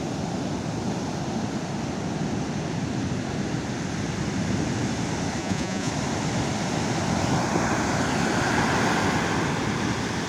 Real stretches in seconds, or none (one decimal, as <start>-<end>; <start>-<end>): 0.0-5.4; 5.9-10.3